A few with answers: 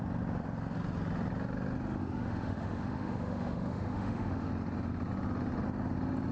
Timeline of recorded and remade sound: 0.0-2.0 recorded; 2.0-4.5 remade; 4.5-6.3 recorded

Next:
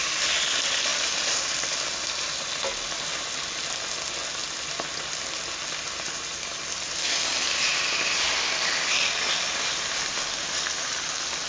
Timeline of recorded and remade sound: 0.0-11.5 recorded

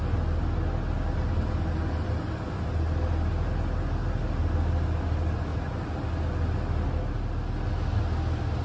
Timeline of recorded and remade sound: 0.0-8.6 recorded

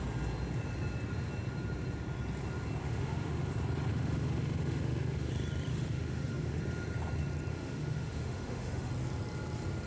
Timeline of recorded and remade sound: 0.0-2.8 recorded; 2.8-3.5 remade; 3.5-3.9 recorded; 3.9-5.3 remade; 5.3-5.7 recorded; 5.7-6.6 remade; 6.6-7.5 recorded; 7.5-8.9 remade; 8.9-9.9 recorded